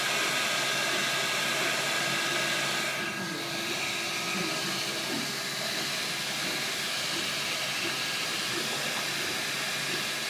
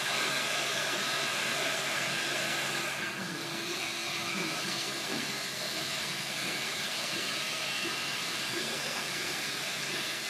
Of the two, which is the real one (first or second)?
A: first